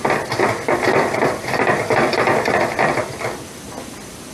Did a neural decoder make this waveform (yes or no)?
no